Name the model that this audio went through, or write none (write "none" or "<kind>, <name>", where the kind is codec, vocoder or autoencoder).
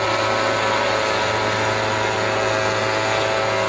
none